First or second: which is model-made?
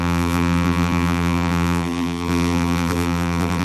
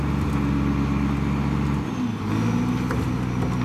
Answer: first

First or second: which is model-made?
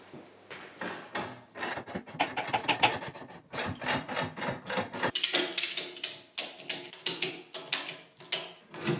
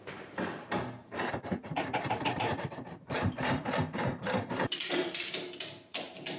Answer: second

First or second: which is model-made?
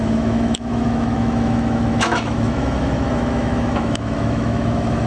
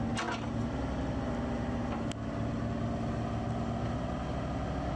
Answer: first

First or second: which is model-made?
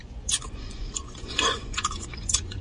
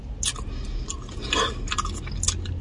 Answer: first